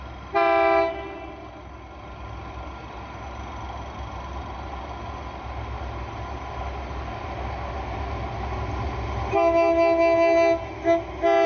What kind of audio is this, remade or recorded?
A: recorded